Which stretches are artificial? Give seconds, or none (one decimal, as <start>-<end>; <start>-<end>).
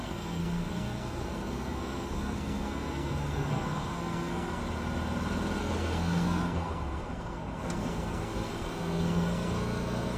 0.0-4.6; 5.6-10.2